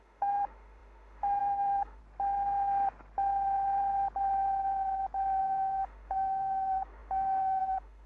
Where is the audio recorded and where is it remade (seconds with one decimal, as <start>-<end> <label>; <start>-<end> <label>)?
0.0-2.0 remade; 2.0-5.4 recorded; 5.4-8.1 remade